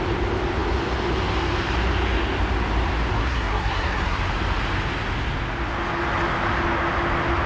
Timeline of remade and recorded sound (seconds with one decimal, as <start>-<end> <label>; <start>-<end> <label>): 0.0-3.2 recorded; 3.2-4.2 remade; 4.2-7.5 recorded